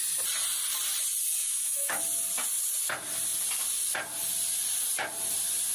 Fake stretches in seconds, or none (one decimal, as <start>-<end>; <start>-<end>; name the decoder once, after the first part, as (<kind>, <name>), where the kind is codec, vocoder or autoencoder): 1.4-2.0 (autoencoder, DAC-VAE)